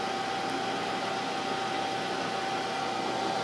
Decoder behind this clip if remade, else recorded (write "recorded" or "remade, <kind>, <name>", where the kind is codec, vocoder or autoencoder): recorded